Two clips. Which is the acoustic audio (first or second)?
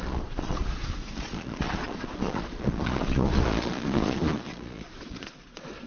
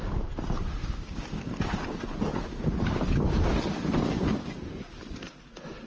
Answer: second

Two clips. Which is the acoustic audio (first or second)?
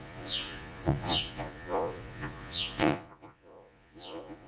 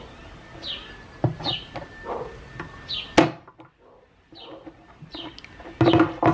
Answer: second